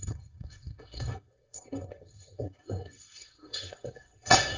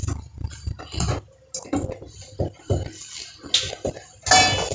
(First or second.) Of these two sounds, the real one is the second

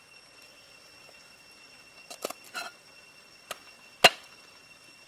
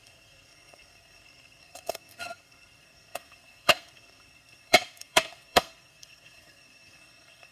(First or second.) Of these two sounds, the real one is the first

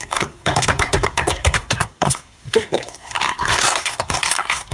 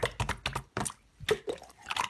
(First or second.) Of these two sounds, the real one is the second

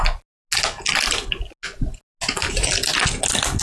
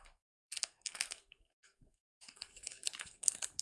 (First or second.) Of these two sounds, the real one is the first